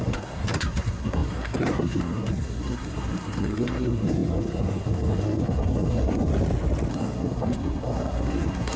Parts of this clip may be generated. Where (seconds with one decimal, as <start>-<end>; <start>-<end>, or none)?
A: 0.0-6.3; 6.9-8.8